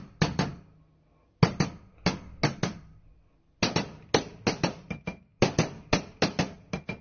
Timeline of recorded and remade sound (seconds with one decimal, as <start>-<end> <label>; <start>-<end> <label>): 0.0-7.0 recorded